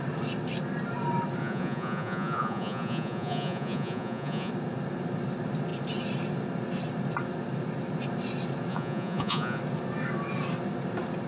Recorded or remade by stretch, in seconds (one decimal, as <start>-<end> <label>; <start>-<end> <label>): 0.0-1.4 recorded; 1.4-4.5 remade; 4.5-8.7 recorded; 8.7-9.6 remade; 9.6-11.3 recorded

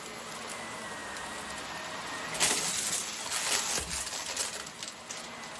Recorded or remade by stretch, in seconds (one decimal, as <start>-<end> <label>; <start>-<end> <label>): 0.0-5.6 recorded

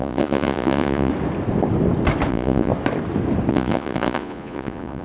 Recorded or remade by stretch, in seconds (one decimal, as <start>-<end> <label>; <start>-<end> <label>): 0.0-1.1 remade; 1.1-2.3 recorded; 2.3-2.7 remade; 2.7-3.5 recorded; 3.5-5.0 remade

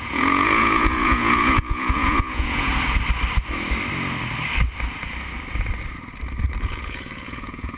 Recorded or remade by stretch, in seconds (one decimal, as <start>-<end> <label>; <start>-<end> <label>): 0.0-2.7 remade; 2.7-6.6 recorded; 6.6-7.8 remade